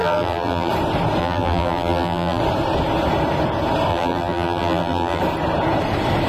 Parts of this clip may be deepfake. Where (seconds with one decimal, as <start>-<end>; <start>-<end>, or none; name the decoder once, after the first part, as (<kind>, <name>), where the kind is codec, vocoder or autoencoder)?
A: 0.0-0.7 (vocoder, BigVGAN v2); 1.2-2.4; 3.9-5.2